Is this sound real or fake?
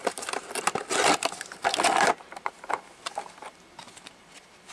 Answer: real